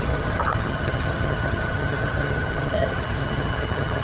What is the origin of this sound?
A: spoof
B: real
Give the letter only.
A